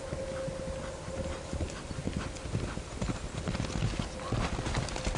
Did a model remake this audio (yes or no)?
no